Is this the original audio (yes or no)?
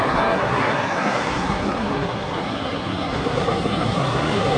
no